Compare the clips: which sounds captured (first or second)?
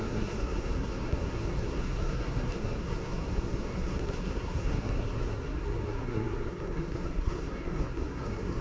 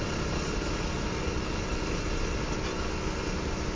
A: second